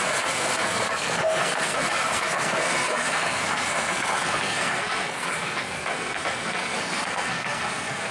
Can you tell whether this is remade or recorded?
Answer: remade